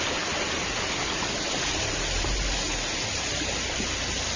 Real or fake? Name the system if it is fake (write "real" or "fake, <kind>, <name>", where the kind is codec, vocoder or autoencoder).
real